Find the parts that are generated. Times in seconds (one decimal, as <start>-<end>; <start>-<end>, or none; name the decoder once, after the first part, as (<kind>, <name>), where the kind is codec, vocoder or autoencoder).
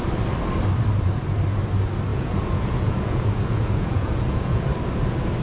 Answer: 2.1-4.6 (vocoder, Vocos)